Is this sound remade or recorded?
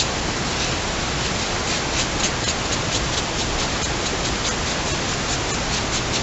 recorded